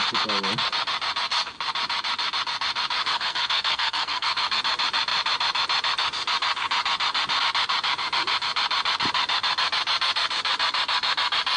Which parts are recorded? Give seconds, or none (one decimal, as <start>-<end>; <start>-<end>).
0.0-3.0; 4.6-11.6